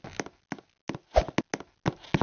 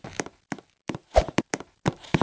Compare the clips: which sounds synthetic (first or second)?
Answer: second